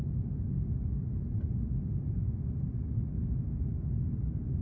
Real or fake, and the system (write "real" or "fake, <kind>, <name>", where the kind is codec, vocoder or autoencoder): real